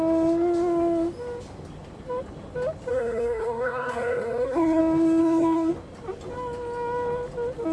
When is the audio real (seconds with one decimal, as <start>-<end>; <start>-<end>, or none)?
0.0-2.9; 4.8-5.2; 5.7-7.7